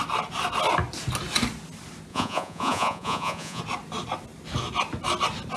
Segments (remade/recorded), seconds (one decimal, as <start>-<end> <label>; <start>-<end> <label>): 0.0-2.1 recorded; 2.1-3.6 remade; 3.6-5.6 recorded